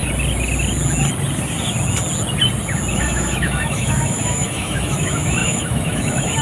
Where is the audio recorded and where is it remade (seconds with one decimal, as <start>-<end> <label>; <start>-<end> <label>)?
0.0-2.9 recorded; 2.9-6.4 remade